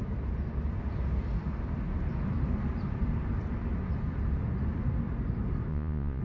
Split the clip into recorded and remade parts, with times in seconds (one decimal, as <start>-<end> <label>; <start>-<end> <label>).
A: 0.0-5.7 recorded; 5.7-6.2 remade